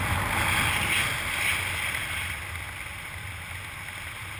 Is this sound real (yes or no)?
yes